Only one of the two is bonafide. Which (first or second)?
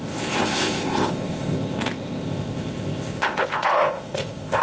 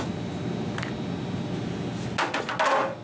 second